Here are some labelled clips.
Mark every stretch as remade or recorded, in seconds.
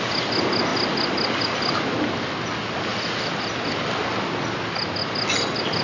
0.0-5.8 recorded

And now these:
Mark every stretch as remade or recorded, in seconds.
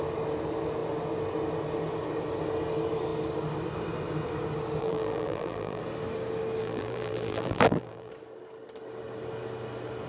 0.0-4.8 recorded; 4.8-5.8 remade; 5.8-6.6 recorded; 6.6-8.1 remade; 8.1-10.1 recorded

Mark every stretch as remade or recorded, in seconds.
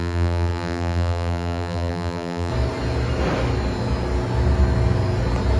0.0-2.5 remade; 2.5-5.6 recorded